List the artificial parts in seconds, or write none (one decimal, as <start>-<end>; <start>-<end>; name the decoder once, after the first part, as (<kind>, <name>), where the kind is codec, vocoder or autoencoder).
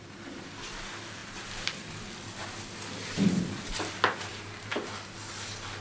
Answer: none